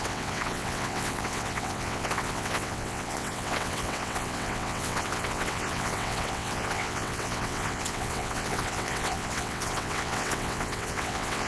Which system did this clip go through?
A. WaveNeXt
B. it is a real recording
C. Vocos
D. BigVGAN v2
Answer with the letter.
A